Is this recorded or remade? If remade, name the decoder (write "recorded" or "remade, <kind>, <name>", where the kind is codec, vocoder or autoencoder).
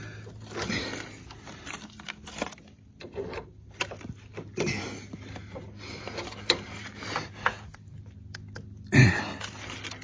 recorded